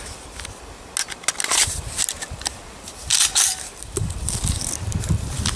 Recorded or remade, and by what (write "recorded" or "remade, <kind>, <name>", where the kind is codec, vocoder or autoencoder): recorded